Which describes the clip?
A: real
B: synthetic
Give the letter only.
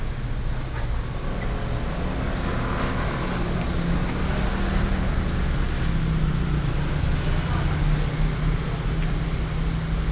A